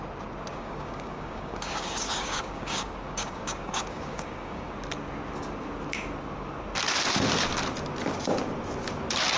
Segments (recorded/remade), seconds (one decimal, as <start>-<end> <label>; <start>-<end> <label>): 0.0-0.5 recorded; 0.5-4.7 remade; 4.7-9.4 recorded